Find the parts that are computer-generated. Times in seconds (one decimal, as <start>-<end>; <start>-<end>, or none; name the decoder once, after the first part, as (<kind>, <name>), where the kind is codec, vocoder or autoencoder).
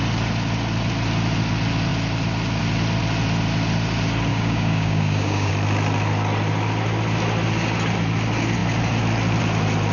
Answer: 4.3-5.5 (codec, DAC)